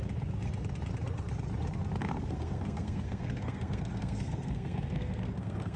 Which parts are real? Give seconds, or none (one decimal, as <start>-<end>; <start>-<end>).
0.0-2.0